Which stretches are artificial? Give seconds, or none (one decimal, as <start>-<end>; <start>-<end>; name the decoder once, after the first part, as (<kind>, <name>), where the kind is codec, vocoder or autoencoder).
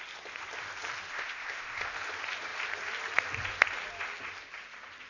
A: 1.1-1.9 (codec, ZipCodec)